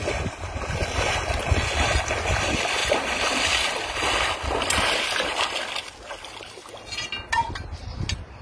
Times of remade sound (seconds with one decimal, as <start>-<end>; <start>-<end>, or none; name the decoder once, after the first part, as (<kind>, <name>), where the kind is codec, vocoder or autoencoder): none